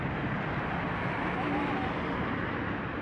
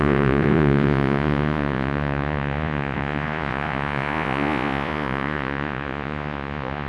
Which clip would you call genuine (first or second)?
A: first